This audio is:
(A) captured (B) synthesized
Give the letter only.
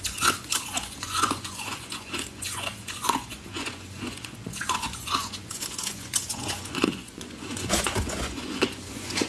B